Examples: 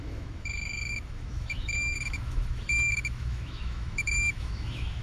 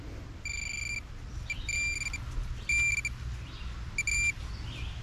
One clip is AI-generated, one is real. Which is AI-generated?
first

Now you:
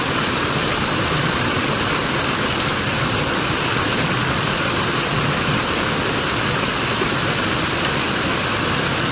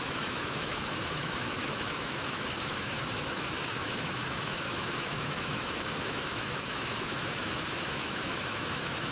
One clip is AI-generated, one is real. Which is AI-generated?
second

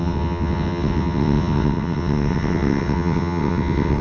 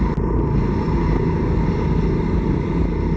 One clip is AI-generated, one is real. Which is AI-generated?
first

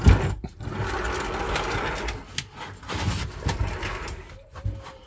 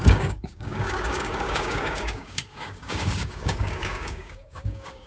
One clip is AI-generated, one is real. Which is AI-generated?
second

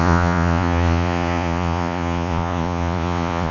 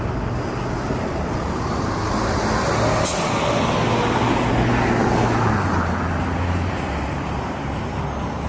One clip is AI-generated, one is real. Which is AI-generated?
first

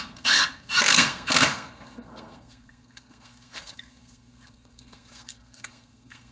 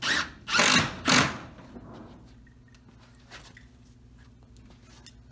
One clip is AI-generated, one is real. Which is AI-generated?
first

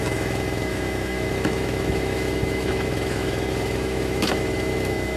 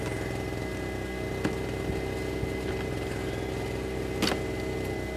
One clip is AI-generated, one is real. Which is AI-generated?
first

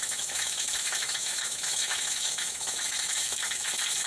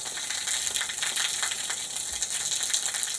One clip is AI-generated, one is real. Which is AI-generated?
first